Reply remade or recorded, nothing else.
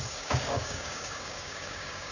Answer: remade